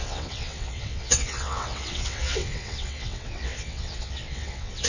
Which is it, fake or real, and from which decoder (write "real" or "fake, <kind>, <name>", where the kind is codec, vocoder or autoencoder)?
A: fake, vocoder, WaveNeXt